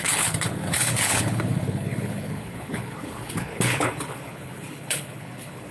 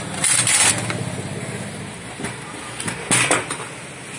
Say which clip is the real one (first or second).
second